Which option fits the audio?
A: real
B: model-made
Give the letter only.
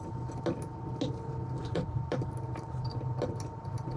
A